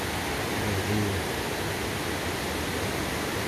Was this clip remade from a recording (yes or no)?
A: no